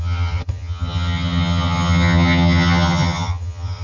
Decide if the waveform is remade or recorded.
remade